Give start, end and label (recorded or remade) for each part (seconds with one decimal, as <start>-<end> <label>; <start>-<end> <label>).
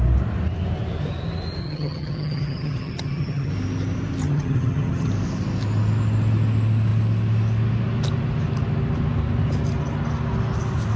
0.0-1.6 recorded; 1.6-3.5 remade; 3.5-4.2 recorded; 4.2-5.1 remade; 5.1-11.0 recorded